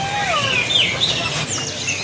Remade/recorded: recorded